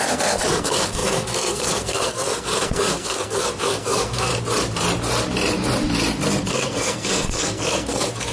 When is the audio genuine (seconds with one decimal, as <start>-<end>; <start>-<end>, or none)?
4.3-6.5